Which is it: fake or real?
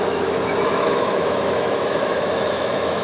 fake